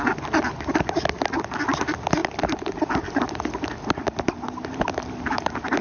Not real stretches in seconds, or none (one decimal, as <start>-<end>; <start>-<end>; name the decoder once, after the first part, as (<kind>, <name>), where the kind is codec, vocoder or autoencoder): 2.2-5.8 (vocoder, BigVGAN v2)